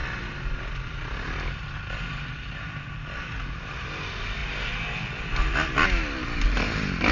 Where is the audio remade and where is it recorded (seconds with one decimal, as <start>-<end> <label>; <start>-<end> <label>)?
0.0-7.1 recorded